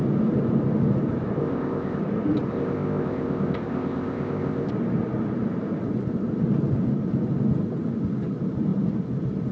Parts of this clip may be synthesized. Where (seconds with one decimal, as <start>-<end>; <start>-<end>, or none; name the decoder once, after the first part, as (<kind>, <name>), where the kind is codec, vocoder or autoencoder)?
1.4-2.0 (codec, ZipCodec); 2.5-4.7